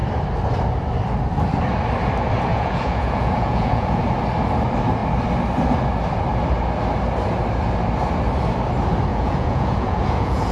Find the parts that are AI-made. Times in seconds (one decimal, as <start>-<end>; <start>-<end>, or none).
2.5-4.0; 9.1-10.5